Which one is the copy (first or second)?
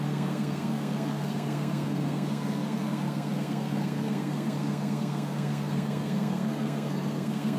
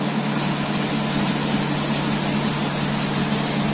first